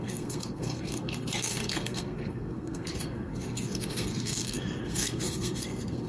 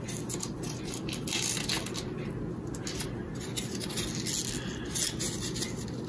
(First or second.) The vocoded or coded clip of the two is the first